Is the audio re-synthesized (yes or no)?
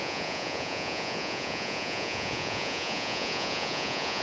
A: yes